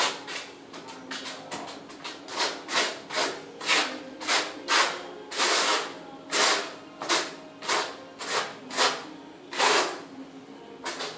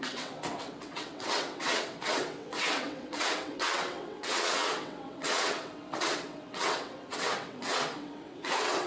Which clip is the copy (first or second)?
second